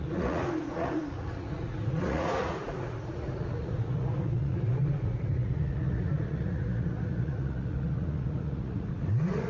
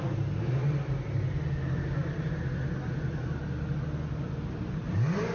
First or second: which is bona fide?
second